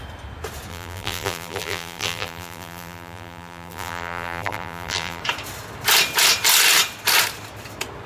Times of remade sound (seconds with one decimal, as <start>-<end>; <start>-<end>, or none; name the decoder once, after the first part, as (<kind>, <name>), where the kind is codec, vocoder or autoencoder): 0.7-5.2 (vocoder, BigVGAN v2)